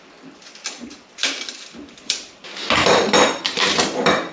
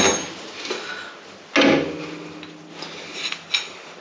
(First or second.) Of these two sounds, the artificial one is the first